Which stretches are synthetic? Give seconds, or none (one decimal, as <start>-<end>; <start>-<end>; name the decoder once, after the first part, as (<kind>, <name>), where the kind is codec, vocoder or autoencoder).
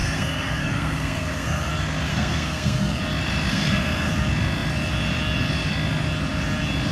0.0-1.7 (codec, SNAC); 2.1-3.0; 3.5-4.1